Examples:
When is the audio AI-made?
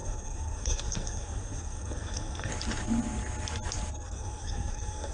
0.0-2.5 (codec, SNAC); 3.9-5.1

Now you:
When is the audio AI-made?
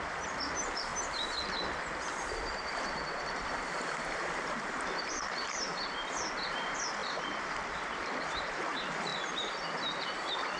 0.0-0.9 (vocoder, BigVGAN v2); 2.3-5.7; 6.5-10.6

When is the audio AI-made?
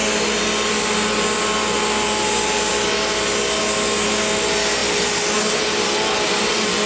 none